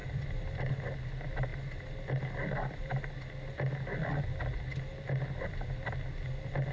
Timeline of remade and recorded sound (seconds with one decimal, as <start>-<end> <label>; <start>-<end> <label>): 0.0-0.7 remade; 0.7-6.7 recorded